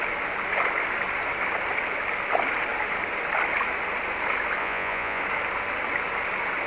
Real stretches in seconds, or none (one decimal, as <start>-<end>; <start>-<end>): 0.0-4.6; 5.2-6.7